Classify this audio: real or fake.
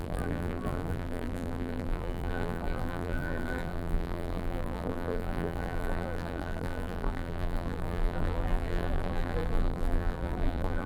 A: fake